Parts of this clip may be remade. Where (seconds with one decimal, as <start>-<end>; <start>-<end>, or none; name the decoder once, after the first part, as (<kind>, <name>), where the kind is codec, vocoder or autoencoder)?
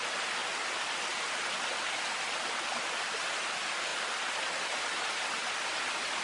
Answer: none